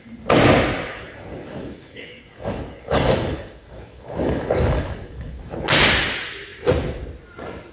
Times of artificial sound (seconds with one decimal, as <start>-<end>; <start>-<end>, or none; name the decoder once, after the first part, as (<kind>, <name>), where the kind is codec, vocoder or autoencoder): 0.9-5.5 (codec, DAC)